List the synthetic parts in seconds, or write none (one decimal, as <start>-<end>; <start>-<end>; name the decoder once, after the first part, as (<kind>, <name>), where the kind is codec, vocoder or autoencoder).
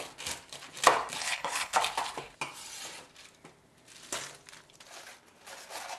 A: 1.2-1.8 (codec, HILCodec)